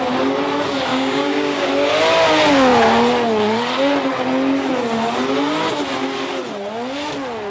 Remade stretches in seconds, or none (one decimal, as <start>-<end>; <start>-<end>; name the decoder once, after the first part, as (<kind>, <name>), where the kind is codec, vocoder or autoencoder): 0.9-1.7 (codec, DAC)